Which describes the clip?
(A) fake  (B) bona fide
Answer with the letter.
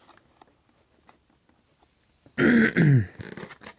B